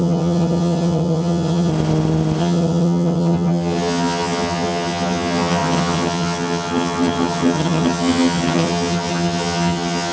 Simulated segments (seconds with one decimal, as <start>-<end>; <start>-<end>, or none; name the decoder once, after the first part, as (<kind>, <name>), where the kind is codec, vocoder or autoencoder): 0.0-1.7 (vocoder, HiFi-GAN); 2.4-10.1